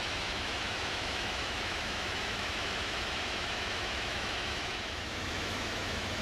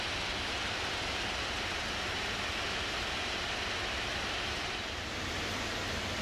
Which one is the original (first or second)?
second